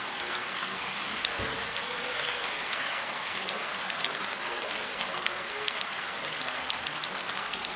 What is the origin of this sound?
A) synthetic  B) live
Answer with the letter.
A